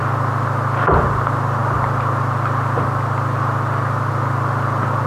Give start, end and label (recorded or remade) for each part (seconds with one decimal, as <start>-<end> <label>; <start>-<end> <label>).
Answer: 0.0-5.1 recorded